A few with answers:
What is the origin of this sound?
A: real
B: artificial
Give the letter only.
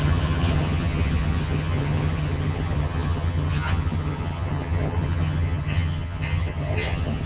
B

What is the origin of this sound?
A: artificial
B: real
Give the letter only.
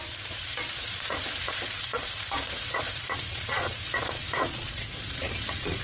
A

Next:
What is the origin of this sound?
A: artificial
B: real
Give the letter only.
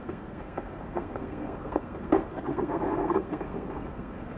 A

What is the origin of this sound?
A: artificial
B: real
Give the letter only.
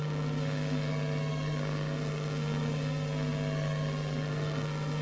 A